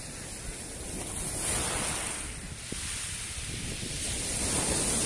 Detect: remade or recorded recorded